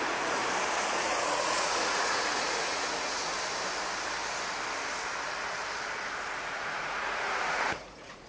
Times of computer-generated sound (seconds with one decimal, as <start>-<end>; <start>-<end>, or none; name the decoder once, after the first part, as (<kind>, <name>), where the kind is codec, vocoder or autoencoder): 0.0-0.4 (vocoder, Vocos); 1.0-3.3; 6.4-8.3